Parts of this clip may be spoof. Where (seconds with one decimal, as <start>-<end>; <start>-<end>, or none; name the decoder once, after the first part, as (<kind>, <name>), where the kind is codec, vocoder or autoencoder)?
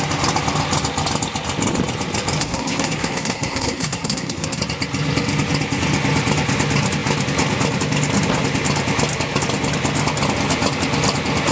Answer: 2.4-4.6 (codec, SNAC)